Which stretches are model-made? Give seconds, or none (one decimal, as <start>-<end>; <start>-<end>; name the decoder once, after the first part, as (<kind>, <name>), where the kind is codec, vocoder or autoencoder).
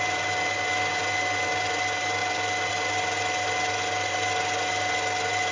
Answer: none